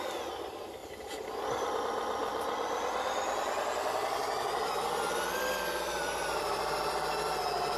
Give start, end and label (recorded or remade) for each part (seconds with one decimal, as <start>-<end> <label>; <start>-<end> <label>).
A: 0.0-0.8 recorded; 0.8-1.8 remade; 1.8-2.3 recorded; 2.3-7.0 remade; 7.0-7.8 recorded